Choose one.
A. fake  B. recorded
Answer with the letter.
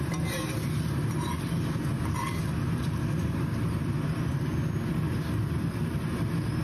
B